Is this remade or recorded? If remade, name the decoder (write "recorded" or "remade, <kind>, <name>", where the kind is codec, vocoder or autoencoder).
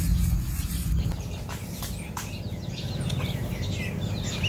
recorded